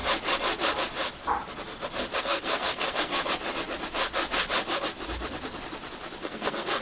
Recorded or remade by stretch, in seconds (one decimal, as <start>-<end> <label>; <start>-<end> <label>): 0.0-2.2 recorded; 2.2-3.2 remade; 3.2-6.2 recorded; 6.2-6.8 remade